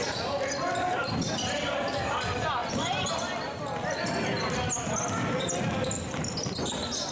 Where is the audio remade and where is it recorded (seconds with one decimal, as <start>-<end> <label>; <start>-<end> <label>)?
0.0-7.1 recorded